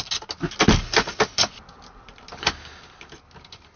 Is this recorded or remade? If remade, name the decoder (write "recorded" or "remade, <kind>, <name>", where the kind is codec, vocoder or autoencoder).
recorded